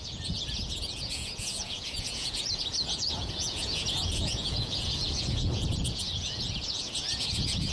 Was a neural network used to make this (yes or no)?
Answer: yes